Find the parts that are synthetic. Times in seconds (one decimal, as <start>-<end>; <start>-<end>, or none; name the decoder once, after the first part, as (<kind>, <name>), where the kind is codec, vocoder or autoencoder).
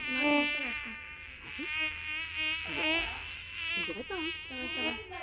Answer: 0.6-3.7 (autoencoder, DAC-VAE)